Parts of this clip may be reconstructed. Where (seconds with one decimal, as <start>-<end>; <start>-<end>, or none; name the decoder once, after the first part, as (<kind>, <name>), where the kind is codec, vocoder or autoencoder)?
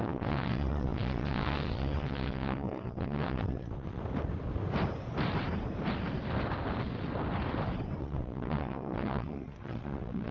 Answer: 0.0-4.0 (vocoder, WaveNeXt); 8.0-10.3